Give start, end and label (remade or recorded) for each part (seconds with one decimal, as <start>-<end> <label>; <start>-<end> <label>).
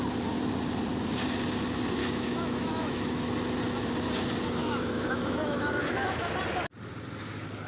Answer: 0.0-2.0 recorded; 2.0-3.2 remade; 3.2-4.6 recorded; 4.6-6.3 remade; 6.3-7.7 recorded